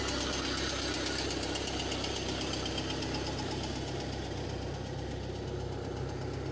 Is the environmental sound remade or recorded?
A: recorded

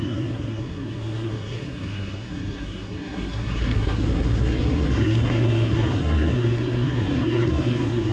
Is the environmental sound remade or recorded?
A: remade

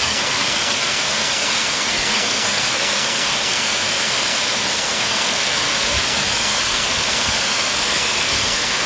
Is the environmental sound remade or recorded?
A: remade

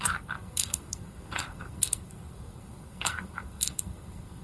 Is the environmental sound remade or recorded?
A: remade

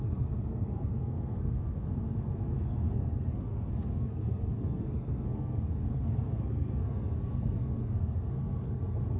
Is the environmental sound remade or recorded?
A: remade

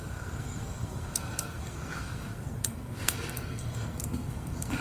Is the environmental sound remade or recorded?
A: remade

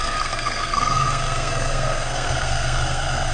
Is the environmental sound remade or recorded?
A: remade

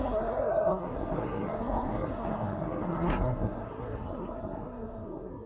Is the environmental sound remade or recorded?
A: remade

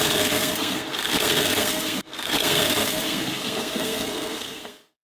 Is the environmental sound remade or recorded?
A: remade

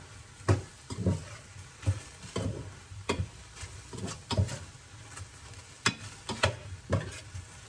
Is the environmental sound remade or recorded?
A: recorded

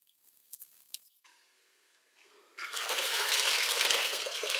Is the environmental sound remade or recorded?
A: remade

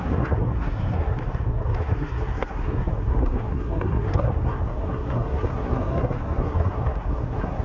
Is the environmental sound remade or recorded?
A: remade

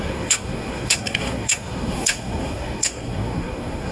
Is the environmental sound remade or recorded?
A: remade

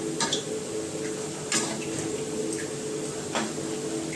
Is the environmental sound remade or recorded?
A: recorded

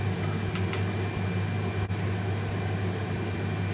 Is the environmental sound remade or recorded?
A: recorded